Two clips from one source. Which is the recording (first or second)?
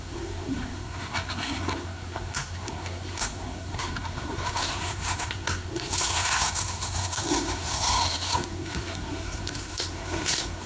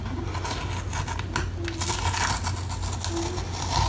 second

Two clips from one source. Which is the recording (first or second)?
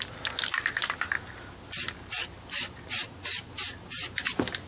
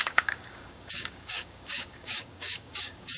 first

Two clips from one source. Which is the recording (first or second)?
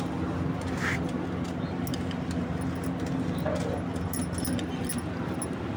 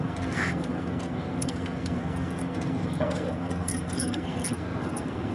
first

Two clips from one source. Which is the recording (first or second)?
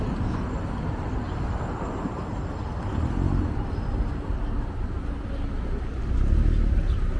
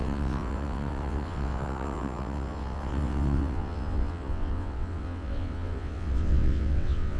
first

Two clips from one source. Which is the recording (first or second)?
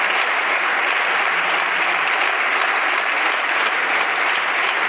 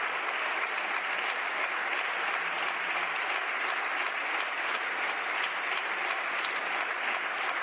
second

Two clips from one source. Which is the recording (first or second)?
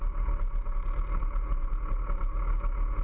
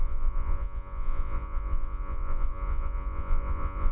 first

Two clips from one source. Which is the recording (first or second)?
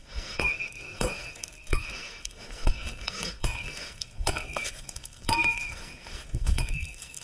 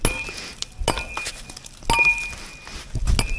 second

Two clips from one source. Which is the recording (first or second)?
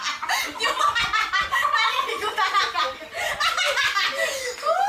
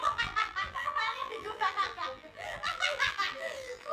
first